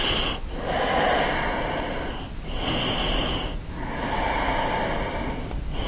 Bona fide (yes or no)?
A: yes